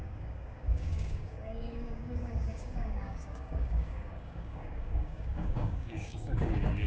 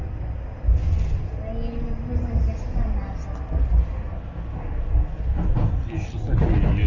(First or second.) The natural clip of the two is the second